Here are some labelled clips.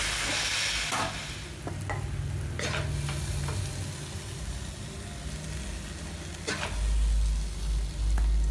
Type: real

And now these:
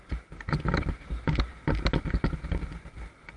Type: real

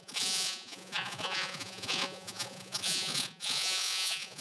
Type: fake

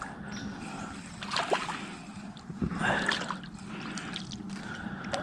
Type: real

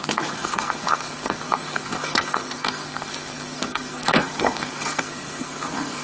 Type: fake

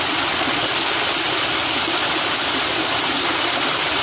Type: real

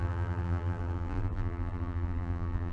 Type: fake